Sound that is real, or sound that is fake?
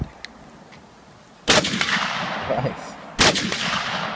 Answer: real